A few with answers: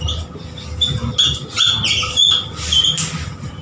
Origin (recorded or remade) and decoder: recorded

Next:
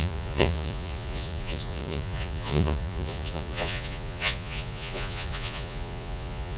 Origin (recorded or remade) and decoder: remade, vocoder, Vocos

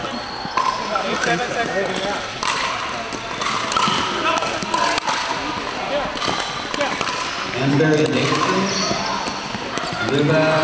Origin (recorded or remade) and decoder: recorded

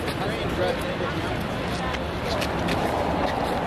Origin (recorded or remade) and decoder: recorded